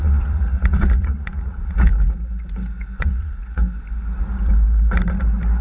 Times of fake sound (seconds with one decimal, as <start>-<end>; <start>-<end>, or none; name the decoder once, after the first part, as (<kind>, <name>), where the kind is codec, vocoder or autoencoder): 0.0-1.9 (vocoder, Vocos); 3.0-3.6